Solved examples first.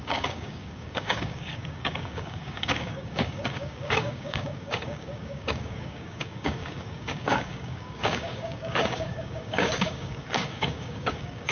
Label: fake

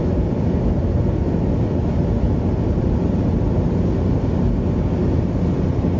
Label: real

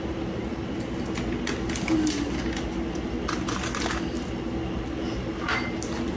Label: real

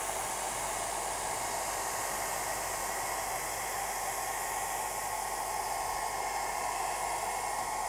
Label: real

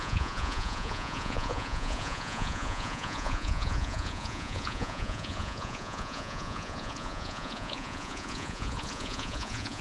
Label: fake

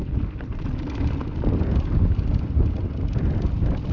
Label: fake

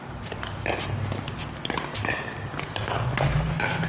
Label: real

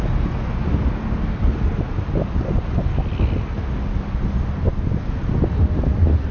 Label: real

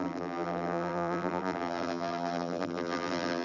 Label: fake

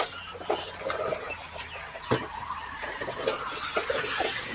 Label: real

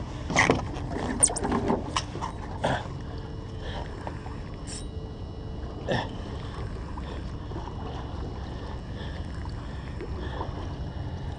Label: real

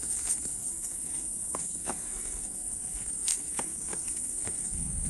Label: fake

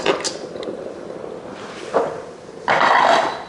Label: fake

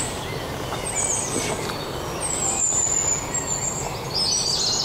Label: real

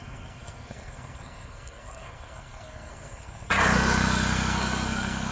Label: fake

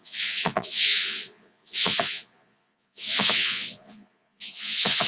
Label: fake